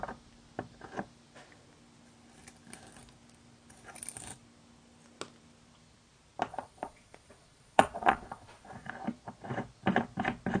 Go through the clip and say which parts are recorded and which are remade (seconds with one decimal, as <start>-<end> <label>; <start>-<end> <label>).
0.0-6.5 recorded; 6.5-8.9 remade; 8.9-10.6 recorded